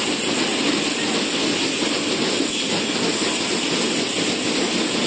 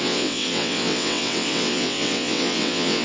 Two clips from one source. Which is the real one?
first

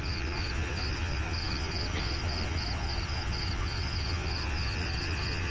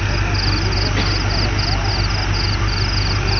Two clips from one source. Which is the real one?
second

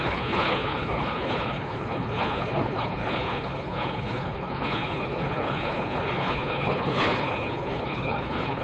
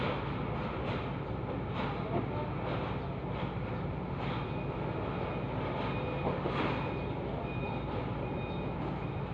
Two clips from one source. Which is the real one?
second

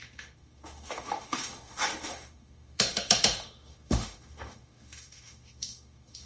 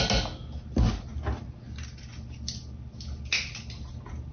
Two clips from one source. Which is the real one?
second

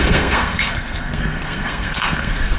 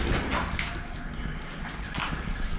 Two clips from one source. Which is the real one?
second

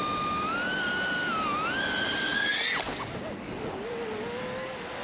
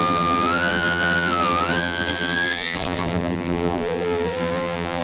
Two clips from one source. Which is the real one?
first